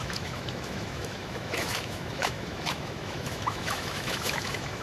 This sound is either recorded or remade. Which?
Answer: remade